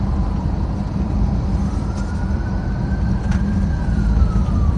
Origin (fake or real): fake